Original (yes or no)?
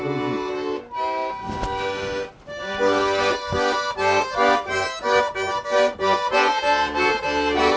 yes